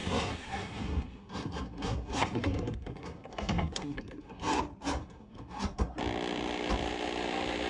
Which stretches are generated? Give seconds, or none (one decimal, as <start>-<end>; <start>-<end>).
0.0-4.6; 5.0-6.0